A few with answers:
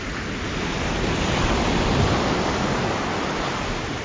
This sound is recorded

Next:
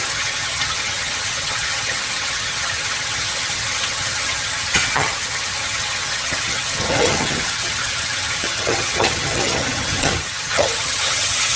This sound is remade